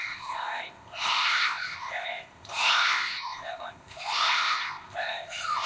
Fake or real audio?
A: fake